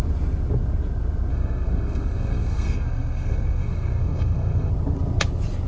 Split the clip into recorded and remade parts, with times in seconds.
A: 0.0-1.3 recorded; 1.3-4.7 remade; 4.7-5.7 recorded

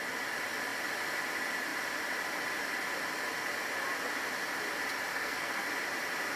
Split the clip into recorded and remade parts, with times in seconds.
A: 0.0-5.1 recorded; 5.1-5.7 remade; 5.7-6.4 recorded

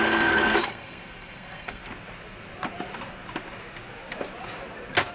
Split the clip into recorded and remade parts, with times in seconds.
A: 0.0-1.8 remade; 1.8-5.1 recorded